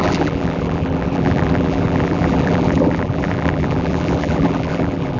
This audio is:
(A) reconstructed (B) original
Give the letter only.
A